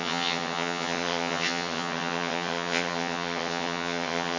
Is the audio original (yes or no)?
no